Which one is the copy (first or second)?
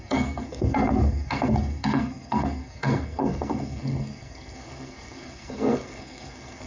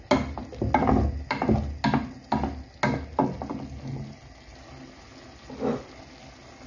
first